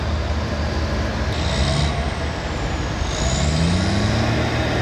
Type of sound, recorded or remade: recorded